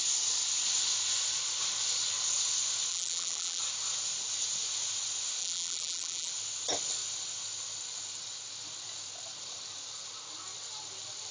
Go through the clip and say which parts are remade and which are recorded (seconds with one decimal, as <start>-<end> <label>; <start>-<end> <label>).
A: 0.0-2.9 recorded; 2.9-3.6 remade; 3.6-5.4 recorded; 5.4-6.3 remade; 6.3-11.3 recorded